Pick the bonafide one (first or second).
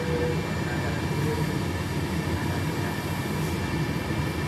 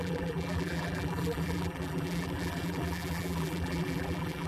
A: first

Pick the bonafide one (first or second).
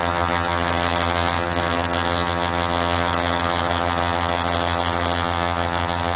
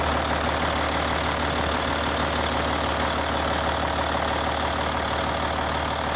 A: second